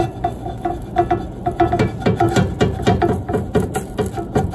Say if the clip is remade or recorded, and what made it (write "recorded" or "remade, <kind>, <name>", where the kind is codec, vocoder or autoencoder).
recorded